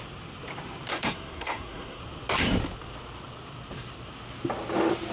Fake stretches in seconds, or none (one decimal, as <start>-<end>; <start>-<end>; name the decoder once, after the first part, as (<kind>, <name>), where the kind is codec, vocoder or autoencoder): 0.9-2.0 (codec, SNAC)